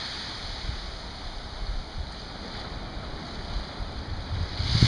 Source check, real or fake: real